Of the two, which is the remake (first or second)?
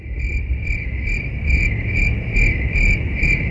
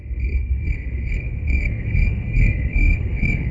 second